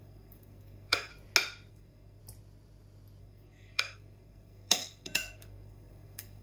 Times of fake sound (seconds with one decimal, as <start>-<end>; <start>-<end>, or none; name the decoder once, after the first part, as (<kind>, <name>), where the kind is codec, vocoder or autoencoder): 0.0-1.1 (codec, SNAC); 1.7-2.2; 3.2-6.4